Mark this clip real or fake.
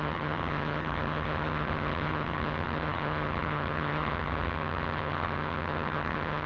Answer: fake